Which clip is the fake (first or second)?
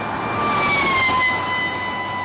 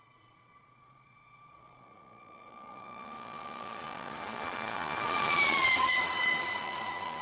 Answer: second